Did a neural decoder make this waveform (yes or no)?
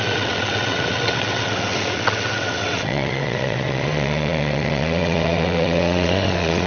yes